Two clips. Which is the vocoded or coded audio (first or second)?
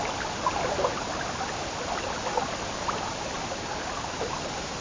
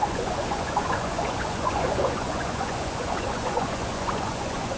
second